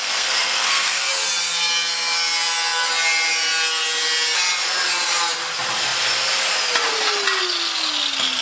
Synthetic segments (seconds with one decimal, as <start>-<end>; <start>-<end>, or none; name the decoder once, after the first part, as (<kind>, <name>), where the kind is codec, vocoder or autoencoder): 0.0-1.1 (codec, SNAC)